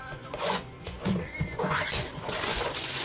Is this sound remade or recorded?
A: remade